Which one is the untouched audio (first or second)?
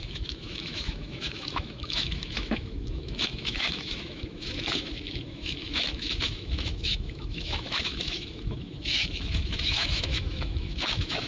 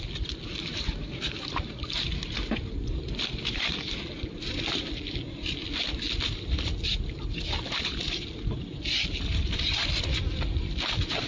second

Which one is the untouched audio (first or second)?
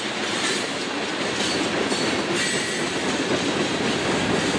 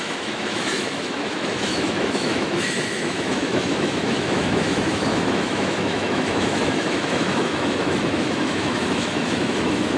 first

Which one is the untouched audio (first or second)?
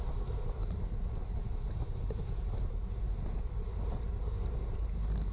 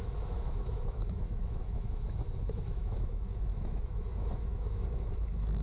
first